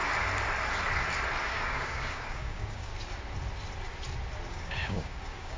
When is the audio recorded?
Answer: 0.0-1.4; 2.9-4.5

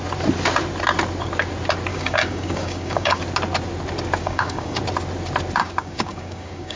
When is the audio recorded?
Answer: 0.0-1.9; 3.2-4.2; 4.8-5.6

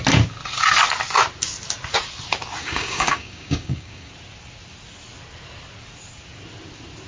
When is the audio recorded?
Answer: 0.0-2.6; 4.1-7.1

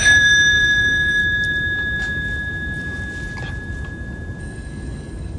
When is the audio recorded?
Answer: 1.2-4.4